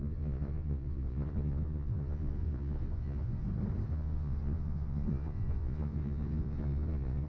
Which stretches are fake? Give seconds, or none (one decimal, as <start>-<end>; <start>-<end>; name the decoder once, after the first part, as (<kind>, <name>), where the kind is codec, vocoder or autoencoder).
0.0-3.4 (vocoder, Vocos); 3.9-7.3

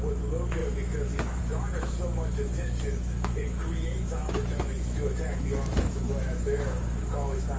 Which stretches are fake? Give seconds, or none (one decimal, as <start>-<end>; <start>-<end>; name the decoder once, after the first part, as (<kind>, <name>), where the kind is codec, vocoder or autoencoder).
0.0-7.6 (autoencoder, DAC-VAE)

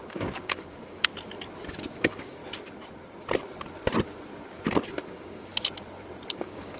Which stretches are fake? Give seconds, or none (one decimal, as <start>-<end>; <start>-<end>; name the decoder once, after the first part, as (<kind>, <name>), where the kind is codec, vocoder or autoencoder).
0.0-1.1 (codec, DAC); 2.0-2.4; 5.1-5.5; 6.3-6.8

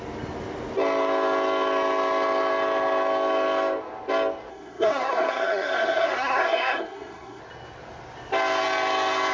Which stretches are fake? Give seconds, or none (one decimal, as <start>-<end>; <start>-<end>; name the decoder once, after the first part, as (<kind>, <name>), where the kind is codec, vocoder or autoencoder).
4.5-7.4 (codec, SNAC)